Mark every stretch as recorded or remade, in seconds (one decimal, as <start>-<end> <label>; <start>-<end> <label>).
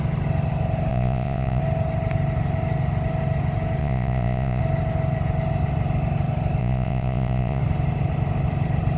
0.0-0.9 recorded; 0.9-1.6 remade; 1.6-3.8 recorded; 3.8-4.6 remade; 4.6-6.6 recorded; 6.6-7.6 remade; 7.6-9.0 recorded